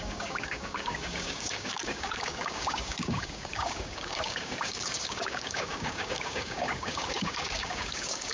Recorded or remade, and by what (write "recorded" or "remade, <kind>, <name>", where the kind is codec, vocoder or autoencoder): remade, codec, DAC